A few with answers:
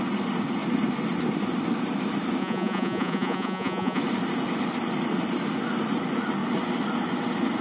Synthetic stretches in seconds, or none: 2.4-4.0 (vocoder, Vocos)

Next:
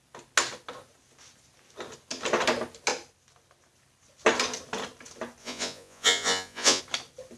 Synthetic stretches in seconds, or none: 5.4-6.8 (vocoder, Vocos)

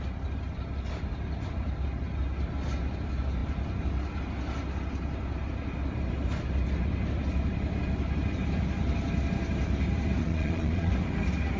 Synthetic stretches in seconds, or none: 10.2-10.9 (vocoder, Vocos)

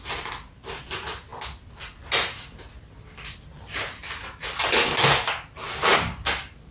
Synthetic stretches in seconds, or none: none

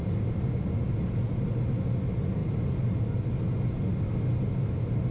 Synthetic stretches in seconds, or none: none

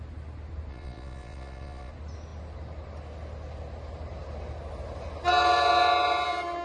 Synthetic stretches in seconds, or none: 0.7-1.9 (vocoder, Vocos)

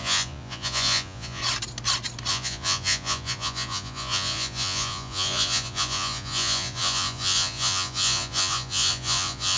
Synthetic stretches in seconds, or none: 0.0-1.4 (vocoder, Vocos); 2.3-9.6